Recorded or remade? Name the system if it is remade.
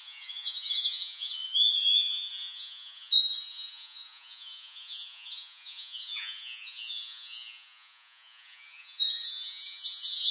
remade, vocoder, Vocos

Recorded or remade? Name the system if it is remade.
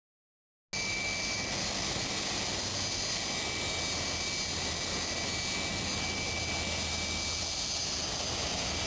recorded